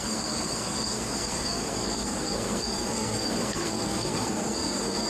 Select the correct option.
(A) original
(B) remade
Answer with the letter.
B